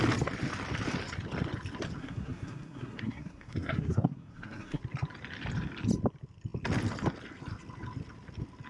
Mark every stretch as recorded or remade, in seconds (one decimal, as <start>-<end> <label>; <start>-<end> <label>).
0.0-2.0 recorded; 2.0-4.8 remade; 4.8-8.7 recorded